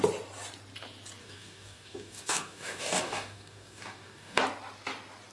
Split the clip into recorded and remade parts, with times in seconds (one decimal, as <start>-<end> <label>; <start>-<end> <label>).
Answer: 0.0-1.2 recorded; 1.2-4.4 remade; 4.4-5.3 recorded